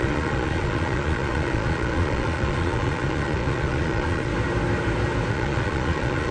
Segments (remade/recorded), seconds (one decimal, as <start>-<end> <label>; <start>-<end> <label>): 0.0-4.3 remade; 4.3-5.3 recorded; 5.3-6.3 remade

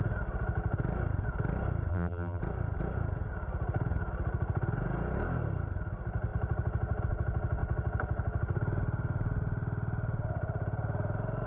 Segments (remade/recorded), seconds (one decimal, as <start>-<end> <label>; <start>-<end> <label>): 0.0-1.9 recorded; 1.9-2.4 remade; 2.4-11.5 recorded

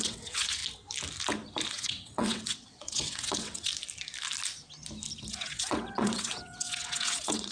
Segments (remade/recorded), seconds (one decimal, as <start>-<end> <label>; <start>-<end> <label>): 0.0-0.6 remade; 0.6-1.7 recorded; 1.7-3.7 remade; 3.7-5.3 recorded; 5.3-7.5 remade

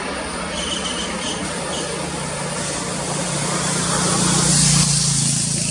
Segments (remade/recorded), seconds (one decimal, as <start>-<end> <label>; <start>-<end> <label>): 0.0-5.7 recorded

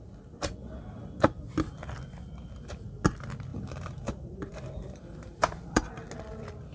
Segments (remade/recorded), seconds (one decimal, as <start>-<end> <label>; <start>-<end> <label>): 0.0-3.5 recorded; 3.5-5.9 remade; 5.9-6.7 recorded

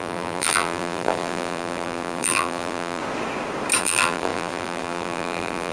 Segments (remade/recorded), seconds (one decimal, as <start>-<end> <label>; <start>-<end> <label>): 0.0-3.0 remade; 3.0-3.8 recorded; 3.8-5.7 remade

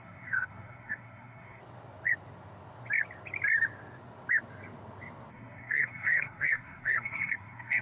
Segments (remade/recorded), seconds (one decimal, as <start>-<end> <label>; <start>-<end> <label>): 0.0-1.6 remade; 1.6-5.3 recorded; 5.3-7.8 remade